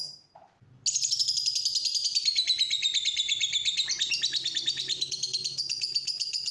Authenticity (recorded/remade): recorded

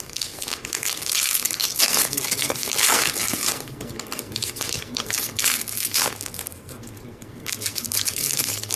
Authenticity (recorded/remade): remade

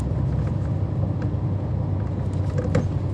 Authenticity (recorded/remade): recorded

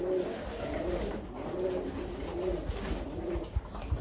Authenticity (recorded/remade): recorded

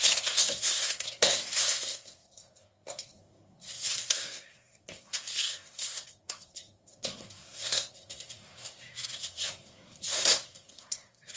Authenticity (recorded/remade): remade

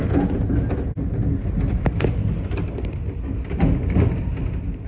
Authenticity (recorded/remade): recorded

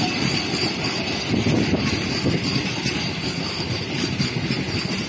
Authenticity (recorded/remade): recorded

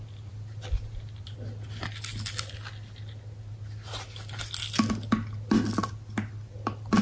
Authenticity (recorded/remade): recorded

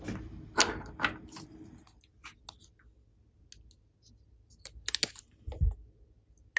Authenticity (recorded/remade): recorded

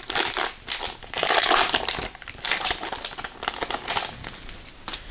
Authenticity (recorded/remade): recorded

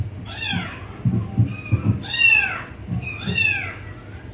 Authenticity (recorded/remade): recorded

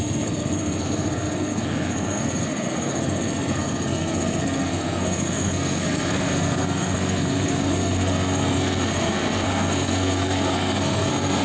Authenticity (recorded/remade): remade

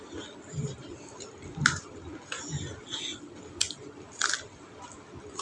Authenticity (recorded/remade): recorded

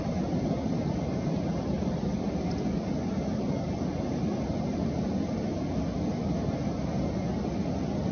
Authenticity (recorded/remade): recorded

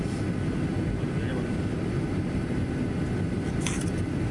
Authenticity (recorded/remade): recorded